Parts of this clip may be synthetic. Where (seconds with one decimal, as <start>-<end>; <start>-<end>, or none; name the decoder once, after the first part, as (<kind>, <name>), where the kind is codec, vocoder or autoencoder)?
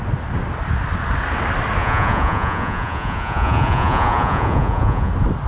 1.8-5.1 (vocoder, Vocos)